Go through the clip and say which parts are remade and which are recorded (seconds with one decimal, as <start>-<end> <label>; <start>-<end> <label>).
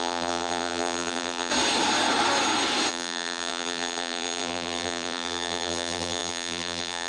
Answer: 0.0-1.5 remade; 1.5-2.9 recorded; 2.9-7.1 remade